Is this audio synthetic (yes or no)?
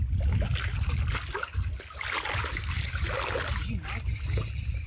no